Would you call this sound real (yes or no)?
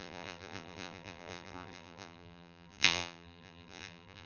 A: no